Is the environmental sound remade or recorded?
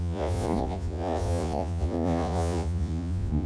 remade